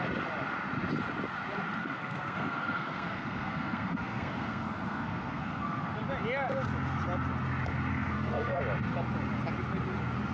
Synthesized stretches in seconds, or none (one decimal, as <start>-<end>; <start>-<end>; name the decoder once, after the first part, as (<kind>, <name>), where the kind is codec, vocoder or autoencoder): 1.8-5.8 (codec, SNAC); 7.9-8.6